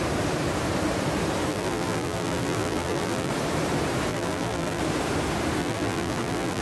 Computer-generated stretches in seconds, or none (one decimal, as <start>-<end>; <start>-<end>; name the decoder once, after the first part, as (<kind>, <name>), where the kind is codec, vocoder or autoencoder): 1.5-3.3 (vocoder, BigVGAN v2); 4.1-4.8; 5.6-6.6